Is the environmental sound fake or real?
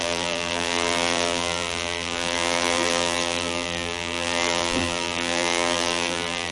fake